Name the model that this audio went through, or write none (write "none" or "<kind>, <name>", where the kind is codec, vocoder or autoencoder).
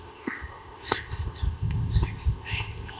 codec, ZipCodec